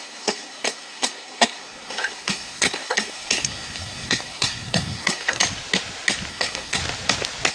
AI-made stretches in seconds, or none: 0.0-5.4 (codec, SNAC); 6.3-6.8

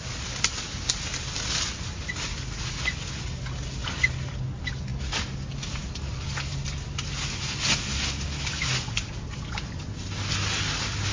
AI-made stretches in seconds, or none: none